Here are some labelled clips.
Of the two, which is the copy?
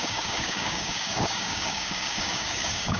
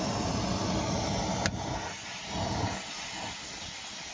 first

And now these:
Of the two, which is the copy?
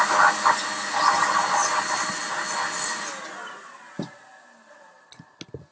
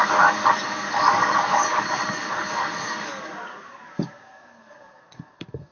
second